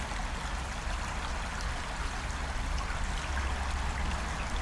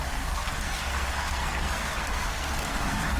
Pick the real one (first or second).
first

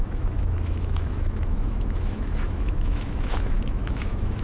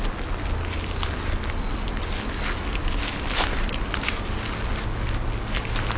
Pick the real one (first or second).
second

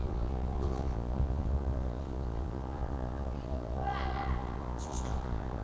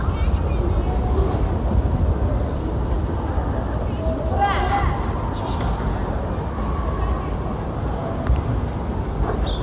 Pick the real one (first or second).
second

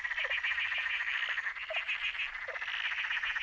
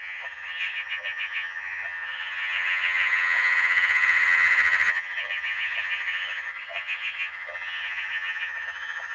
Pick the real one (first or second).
first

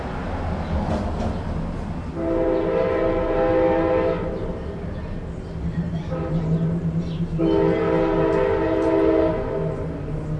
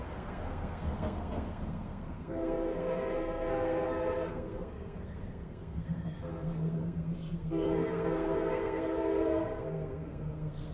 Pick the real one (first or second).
first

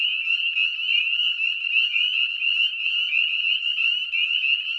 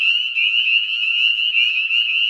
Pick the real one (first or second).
first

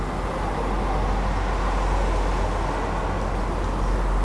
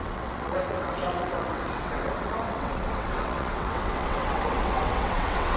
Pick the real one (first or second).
first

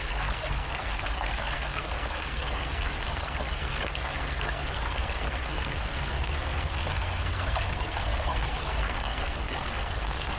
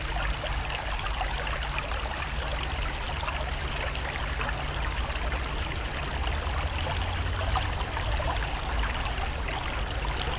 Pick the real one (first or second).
second